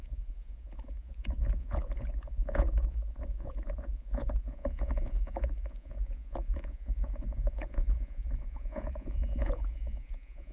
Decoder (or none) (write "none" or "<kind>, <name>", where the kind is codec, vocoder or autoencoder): vocoder, Vocos